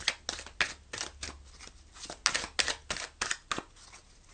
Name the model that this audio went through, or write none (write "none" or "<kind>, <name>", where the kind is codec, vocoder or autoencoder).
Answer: none